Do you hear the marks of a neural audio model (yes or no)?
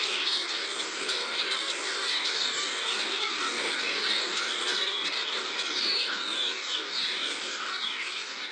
yes